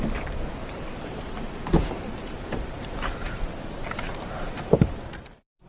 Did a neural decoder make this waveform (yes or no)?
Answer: yes